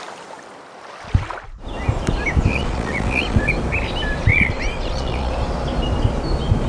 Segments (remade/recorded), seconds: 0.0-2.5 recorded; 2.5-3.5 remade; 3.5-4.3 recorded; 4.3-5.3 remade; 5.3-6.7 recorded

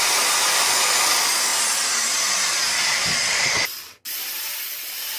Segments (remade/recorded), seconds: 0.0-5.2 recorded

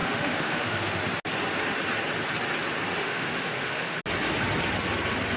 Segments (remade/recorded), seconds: 0.0-1.0 remade; 1.0-3.0 recorded; 3.0-4.0 remade; 4.0-5.4 recorded